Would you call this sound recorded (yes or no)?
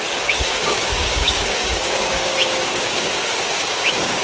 no